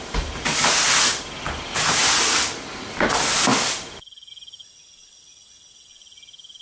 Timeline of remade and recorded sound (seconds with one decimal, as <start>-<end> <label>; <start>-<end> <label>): 0.0-6.6 recorded